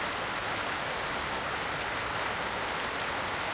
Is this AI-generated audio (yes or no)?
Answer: no